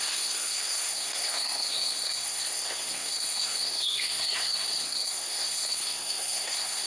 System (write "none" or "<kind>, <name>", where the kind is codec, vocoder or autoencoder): codec, SNAC